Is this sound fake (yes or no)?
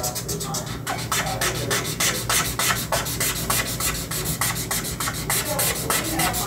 no